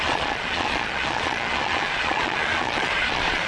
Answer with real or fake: fake